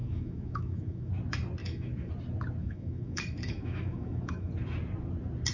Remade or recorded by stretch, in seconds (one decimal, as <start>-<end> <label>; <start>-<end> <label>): 0.0-1.1 remade; 1.1-1.6 recorded; 1.6-2.1 remade; 2.1-2.6 recorded; 2.6-4.5 remade; 4.5-5.5 recorded